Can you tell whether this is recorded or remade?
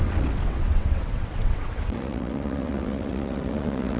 remade